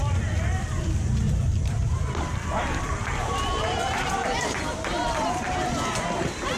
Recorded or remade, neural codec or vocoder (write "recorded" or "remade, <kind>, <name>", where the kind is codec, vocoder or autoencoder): remade, vocoder, BigVGAN v2